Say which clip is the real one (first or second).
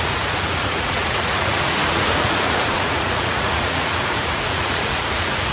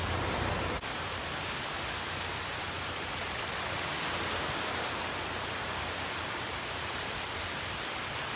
second